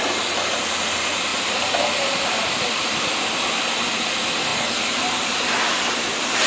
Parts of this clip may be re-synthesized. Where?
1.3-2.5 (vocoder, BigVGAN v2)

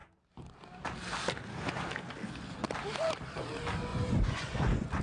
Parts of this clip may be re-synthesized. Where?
3.9-5.0 (vocoder, Vocos)